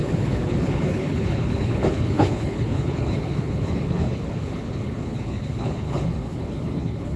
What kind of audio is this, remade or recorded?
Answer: remade